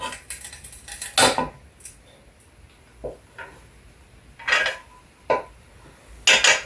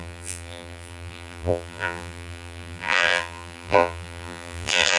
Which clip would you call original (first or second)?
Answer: first